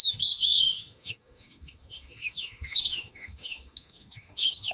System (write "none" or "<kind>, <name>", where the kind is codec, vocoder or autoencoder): autoencoder, DAC-VAE